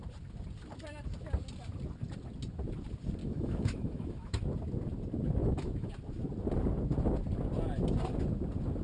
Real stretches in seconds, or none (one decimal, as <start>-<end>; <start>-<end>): 0.0-3.2; 4.4-5.4; 5.9-8.8